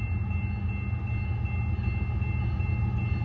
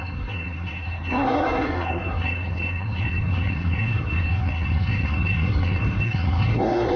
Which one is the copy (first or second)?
second